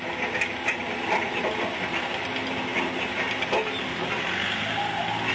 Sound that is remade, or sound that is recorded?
recorded